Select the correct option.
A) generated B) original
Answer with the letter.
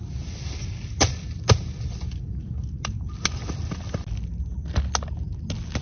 B